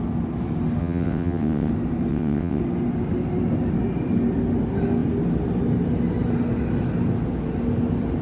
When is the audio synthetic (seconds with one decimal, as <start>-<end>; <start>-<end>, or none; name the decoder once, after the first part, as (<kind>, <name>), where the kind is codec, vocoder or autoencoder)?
0.8-1.7 (vocoder, WaveNeXt); 2.1-2.6